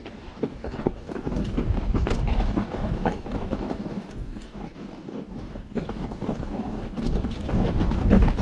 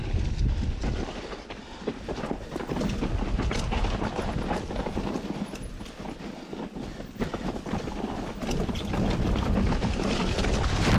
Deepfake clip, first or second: first